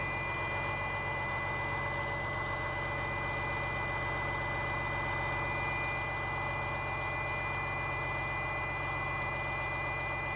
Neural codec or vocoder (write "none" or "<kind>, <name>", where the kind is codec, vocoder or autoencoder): none